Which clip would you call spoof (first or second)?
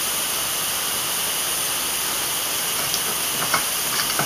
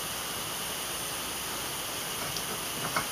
second